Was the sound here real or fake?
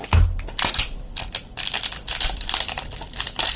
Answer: real